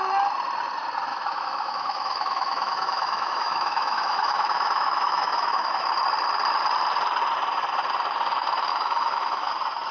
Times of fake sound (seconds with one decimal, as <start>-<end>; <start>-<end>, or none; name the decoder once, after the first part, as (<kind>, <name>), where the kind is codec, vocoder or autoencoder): 1.1-5.9 (autoencoder, DAC-VAE); 8.7-9.5

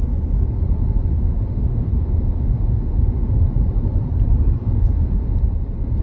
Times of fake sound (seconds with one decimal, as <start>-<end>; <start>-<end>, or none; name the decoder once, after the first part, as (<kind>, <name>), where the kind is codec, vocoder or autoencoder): 1.1-3.4 (autoencoder, DAC-VAE); 4.6-5.4

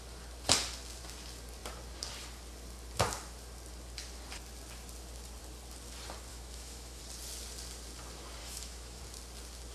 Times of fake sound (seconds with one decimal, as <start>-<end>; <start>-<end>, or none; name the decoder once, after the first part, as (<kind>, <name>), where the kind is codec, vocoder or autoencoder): 6.3-7.0 (autoencoder, DAC-VAE); 8.4-9.0

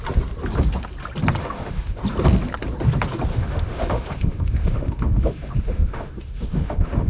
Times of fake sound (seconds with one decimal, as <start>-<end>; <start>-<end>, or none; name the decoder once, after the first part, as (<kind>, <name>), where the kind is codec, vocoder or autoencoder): 1.4-2.0 (autoencoder, DAC-VAE); 3.3-7.1

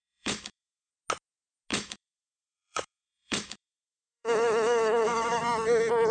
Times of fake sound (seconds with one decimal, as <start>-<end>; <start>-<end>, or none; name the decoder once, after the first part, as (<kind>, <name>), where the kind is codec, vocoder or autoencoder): 0.0-0.9 (autoencoder, DAC-VAE); 1.7-5.4